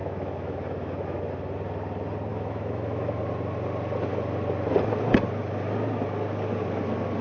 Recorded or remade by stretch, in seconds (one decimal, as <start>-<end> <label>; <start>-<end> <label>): 0.0-1.2 remade; 1.2-2.3 recorded; 2.3-3.2 remade; 3.2-7.2 recorded